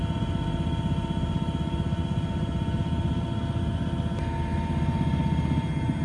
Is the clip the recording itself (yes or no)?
yes